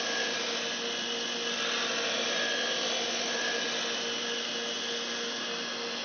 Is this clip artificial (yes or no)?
no